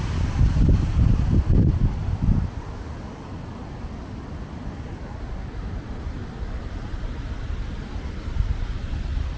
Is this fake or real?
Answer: real